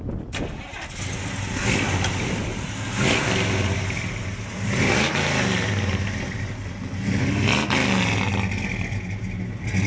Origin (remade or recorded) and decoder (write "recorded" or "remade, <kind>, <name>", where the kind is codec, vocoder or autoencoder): recorded